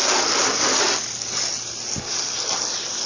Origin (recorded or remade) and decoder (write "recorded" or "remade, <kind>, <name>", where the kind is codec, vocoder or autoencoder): remade, vocoder, BigVGAN v2